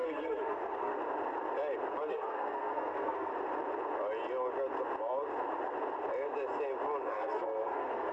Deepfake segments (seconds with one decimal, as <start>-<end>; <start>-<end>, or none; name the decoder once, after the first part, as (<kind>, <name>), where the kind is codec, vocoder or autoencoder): 0.0-0.9 (codec, SNAC); 2.1-3.3; 7.1-8.1